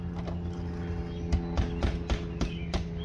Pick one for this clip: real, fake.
real